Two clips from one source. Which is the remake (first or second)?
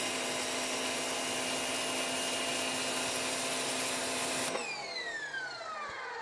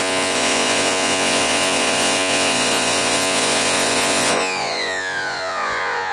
second